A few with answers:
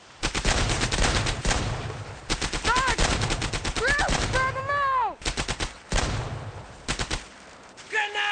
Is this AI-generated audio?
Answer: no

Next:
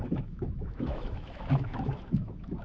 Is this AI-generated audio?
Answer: yes